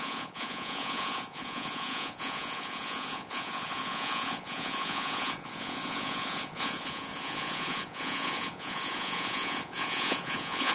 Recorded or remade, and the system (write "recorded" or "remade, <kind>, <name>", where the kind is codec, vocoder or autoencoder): remade, vocoder, Vocos